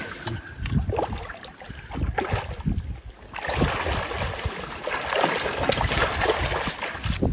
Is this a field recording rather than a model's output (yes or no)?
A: yes